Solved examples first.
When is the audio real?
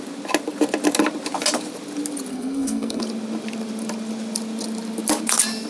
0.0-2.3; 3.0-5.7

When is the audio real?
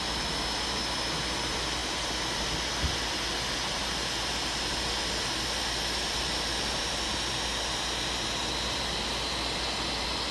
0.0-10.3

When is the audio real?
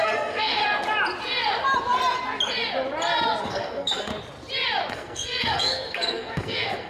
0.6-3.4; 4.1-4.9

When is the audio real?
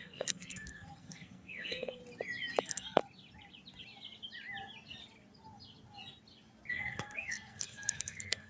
2.0-2.6; 3.0-6.7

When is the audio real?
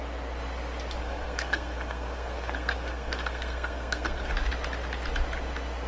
0.0-1.0; 4.3-5.9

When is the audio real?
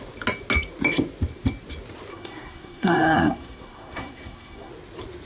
0.0-2.1; 4.7-5.3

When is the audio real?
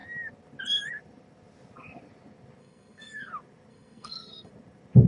0.0-2.6; 3.3-3.7; 4.5-5.1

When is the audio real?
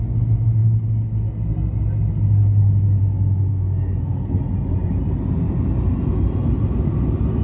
0.0-3.5; 4.4-7.4